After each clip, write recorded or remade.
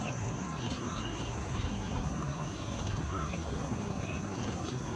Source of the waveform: remade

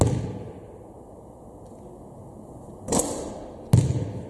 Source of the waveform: recorded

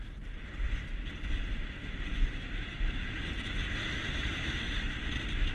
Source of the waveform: recorded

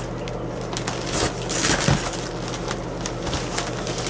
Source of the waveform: recorded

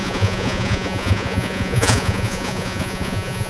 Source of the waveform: remade